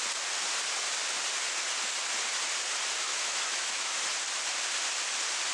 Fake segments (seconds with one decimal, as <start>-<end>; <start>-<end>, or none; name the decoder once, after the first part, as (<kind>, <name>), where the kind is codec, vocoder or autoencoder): 3.1-4.0 (autoencoder, DAC-VAE)